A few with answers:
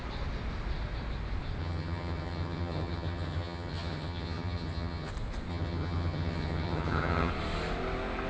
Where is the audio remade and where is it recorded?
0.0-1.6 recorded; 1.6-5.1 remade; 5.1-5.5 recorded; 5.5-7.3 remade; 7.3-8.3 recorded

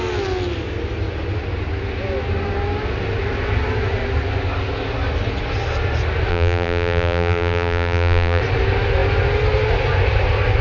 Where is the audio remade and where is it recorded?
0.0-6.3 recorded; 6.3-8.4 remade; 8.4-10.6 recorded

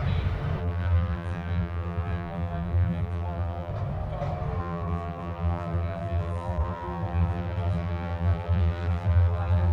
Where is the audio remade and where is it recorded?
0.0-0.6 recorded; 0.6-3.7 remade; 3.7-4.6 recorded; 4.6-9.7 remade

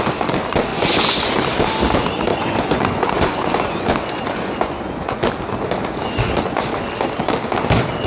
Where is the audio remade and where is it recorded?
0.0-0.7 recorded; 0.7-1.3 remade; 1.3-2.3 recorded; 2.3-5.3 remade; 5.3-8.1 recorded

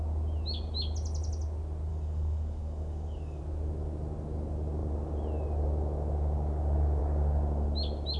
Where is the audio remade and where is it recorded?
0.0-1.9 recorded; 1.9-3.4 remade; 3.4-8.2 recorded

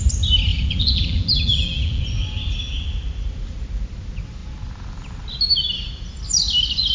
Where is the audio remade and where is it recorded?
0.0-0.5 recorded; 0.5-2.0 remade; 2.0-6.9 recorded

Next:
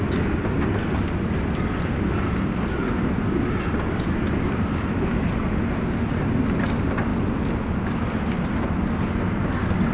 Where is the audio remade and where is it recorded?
0.0-9.9 recorded